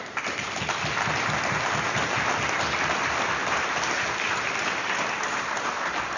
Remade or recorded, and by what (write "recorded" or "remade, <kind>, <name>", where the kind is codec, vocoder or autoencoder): recorded